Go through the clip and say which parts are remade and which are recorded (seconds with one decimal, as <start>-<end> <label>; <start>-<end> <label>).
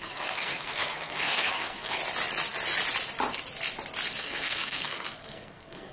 0.0-2.0 remade; 2.0-4.2 recorded; 4.2-5.9 remade